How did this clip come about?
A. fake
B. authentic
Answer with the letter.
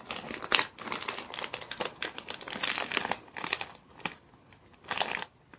B